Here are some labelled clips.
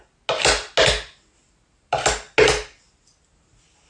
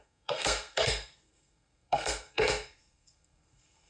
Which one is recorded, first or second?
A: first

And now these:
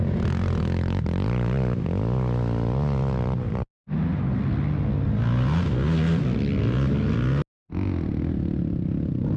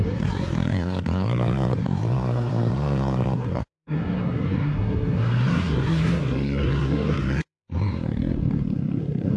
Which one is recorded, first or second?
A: first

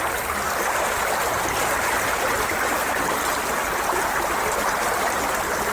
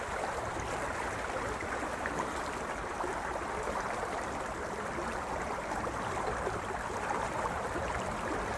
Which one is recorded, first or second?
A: first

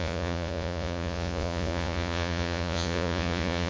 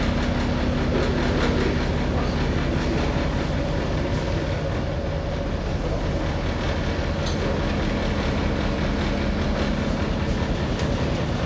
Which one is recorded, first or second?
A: second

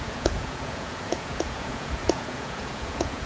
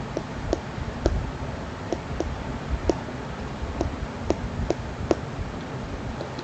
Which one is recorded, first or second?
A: second